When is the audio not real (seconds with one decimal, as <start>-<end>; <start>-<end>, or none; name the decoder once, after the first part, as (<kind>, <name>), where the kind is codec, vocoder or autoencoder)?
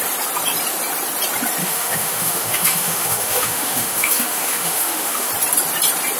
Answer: 1.6-5.3 (autoencoder, DAC-VAE)